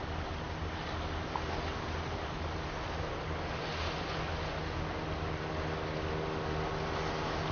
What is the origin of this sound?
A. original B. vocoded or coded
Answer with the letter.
A